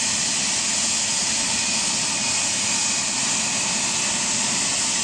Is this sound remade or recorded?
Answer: recorded